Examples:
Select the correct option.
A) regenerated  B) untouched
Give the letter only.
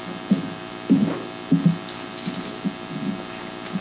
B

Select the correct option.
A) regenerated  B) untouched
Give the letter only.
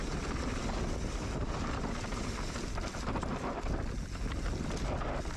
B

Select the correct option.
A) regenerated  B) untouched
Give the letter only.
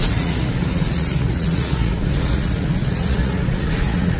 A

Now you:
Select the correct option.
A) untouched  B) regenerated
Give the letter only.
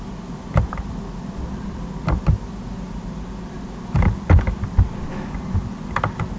A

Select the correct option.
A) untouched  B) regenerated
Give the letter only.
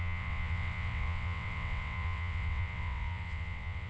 B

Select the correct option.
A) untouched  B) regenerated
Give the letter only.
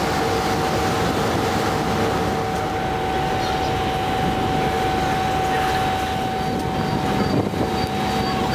A